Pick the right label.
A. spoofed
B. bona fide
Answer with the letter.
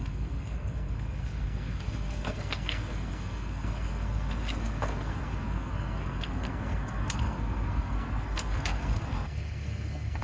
A